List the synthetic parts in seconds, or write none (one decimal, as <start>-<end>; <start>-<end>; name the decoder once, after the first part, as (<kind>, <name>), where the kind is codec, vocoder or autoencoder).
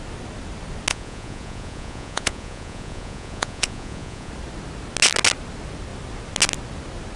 0.9-4.3 (vocoder, Vocos)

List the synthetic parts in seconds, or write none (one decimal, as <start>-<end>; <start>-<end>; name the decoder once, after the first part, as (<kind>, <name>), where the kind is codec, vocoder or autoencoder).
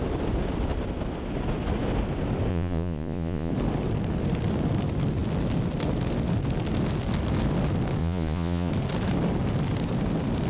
2.5-3.5 (vocoder, Vocos); 8.0-8.7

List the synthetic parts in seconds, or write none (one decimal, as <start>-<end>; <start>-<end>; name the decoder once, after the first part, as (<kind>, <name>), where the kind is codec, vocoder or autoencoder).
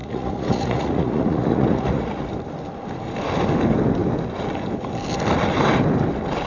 0.0-2.2 (vocoder, Vocos)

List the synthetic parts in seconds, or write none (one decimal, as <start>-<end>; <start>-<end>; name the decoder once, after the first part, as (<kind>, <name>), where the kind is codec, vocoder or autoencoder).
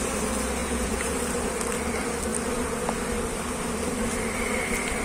0.6-1.1 (vocoder, Vocos)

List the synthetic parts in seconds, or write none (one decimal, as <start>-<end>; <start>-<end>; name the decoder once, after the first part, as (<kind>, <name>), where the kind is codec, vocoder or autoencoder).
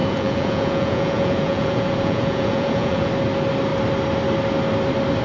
0.0-3.1 (vocoder, Vocos)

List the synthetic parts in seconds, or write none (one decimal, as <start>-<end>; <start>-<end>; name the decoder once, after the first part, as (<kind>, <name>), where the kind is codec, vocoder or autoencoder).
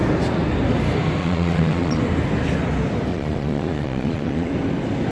1.2-2.0 (vocoder, Vocos); 3.1-4.5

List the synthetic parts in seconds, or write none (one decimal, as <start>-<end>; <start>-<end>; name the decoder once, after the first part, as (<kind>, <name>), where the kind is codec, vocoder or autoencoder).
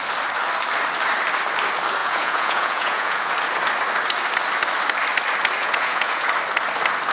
2.0-3.3 (vocoder, Vocos); 5.6-6.3